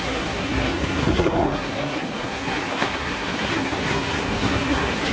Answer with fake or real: fake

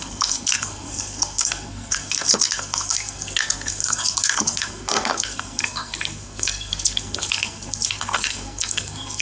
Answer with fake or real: fake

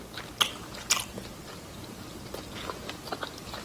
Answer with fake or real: real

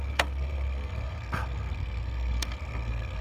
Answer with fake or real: fake